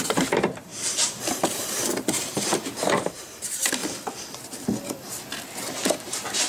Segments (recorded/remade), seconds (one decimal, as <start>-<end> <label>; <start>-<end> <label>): 0.0-0.7 remade; 0.7-1.2 recorded; 1.2-3.8 remade; 3.8-5.9 recorded; 5.9-6.5 remade